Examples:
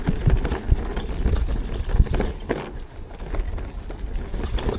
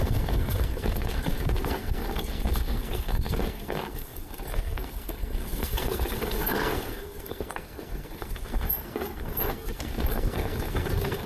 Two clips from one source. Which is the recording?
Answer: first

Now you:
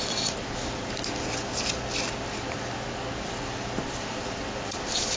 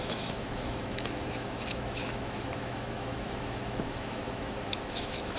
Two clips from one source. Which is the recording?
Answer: first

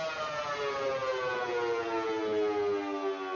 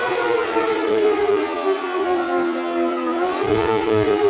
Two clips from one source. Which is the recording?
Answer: first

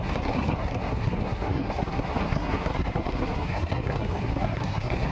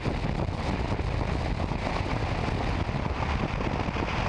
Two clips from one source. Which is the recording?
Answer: second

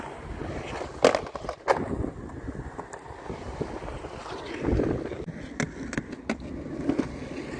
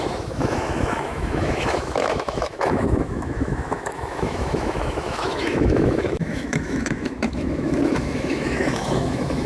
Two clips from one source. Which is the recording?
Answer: first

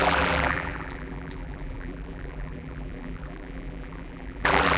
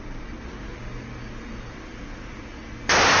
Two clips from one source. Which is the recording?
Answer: second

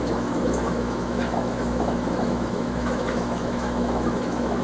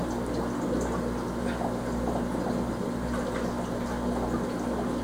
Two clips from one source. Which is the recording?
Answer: second